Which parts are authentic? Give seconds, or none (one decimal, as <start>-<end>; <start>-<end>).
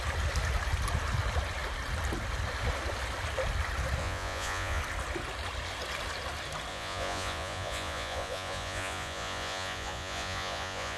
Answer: 0.0-4.0; 4.8-6.7